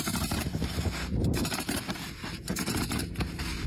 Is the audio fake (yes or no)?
yes